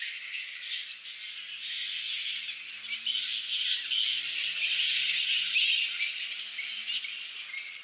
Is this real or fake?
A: real